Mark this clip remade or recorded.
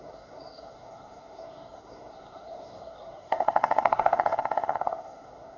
remade